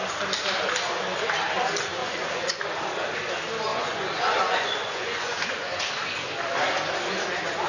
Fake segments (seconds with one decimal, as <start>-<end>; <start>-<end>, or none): 2.0-2.6; 3.7-5.9